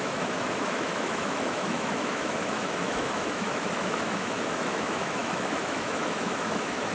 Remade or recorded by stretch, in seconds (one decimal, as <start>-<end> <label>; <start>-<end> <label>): 0.0-6.9 remade